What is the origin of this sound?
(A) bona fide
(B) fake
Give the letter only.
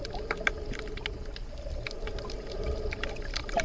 A